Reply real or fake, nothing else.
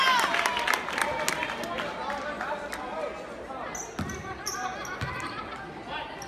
real